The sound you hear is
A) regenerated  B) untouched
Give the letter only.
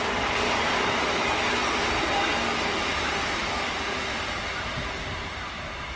B